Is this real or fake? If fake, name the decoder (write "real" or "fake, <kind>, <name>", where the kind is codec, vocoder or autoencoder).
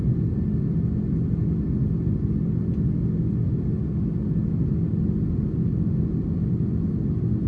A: real